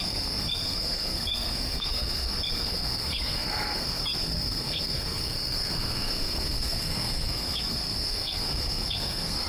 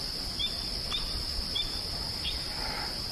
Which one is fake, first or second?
first